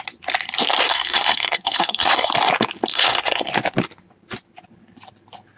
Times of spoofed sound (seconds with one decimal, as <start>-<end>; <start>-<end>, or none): 0.8-2.3; 2.9-3.5